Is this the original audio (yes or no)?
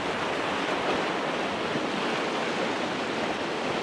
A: yes